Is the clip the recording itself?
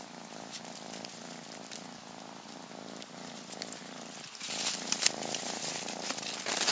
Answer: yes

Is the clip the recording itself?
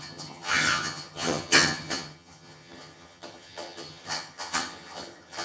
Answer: no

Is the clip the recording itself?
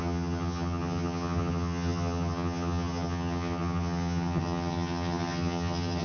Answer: no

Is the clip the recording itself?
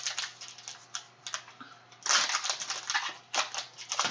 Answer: yes